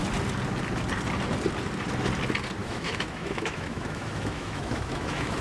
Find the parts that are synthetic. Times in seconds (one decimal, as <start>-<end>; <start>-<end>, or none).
2.6-5.4